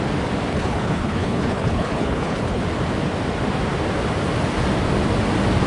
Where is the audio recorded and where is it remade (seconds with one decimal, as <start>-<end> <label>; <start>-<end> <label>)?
0.0-0.5 recorded; 0.5-2.6 remade; 2.6-5.7 recorded